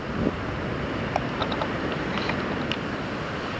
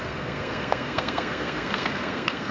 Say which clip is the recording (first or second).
first